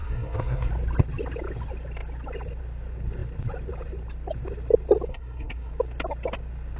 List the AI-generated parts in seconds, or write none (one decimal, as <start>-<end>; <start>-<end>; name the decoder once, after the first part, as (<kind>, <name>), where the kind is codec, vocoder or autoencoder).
0.0-0.7 (codec, SNAC); 5.1-5.7